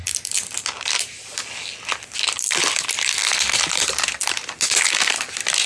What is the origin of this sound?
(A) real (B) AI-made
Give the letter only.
A